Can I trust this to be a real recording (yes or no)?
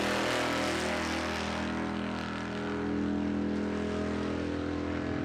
yes